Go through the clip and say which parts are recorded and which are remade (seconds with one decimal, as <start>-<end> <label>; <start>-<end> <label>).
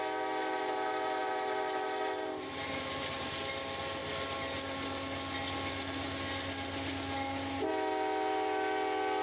0.0-0.4 recorded; 0.4-3.3 remade; 3.3-9.2 recorded